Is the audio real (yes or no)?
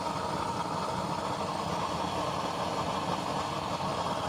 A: yes